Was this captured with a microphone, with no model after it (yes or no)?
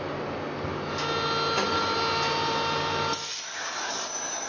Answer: yes